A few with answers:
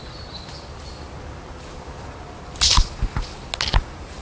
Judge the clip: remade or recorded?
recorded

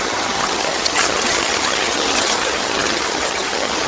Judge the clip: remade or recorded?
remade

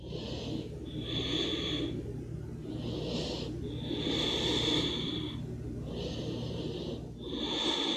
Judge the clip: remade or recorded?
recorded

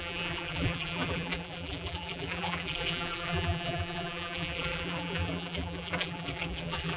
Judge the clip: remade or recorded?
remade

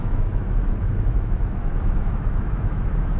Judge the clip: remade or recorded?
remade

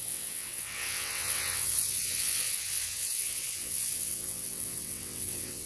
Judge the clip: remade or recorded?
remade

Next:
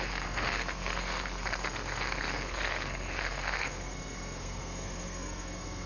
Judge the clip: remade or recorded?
remade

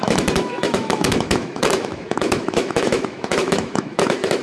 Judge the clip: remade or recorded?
remade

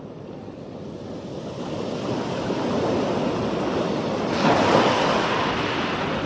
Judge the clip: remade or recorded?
recorded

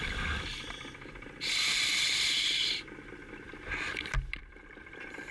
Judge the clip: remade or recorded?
remade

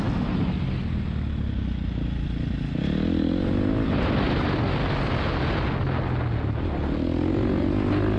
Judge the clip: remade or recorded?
recorded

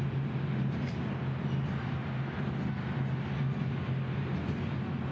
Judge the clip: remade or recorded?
recorded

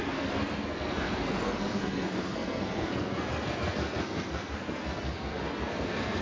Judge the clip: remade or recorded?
remade